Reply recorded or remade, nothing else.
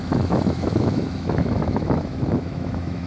remade